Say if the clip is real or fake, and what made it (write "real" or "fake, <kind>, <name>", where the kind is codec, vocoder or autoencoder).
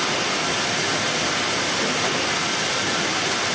real